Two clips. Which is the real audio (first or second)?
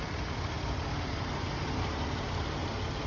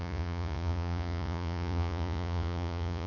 first